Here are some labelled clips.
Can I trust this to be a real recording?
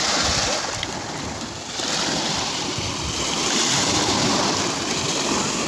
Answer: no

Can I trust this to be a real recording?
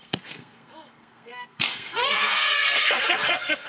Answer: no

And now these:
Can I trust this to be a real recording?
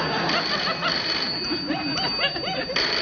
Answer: yes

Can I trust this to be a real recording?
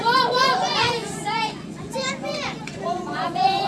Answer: no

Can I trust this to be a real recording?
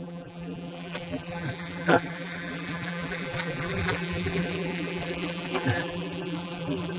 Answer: no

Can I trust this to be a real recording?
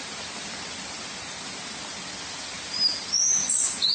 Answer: yes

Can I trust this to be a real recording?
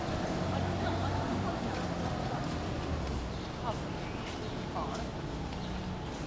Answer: yes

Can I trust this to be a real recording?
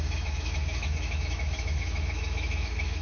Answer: no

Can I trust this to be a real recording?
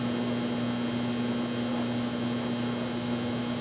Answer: yes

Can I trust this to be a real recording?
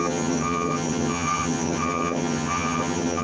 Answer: no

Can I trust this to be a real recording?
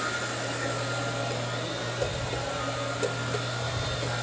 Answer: yes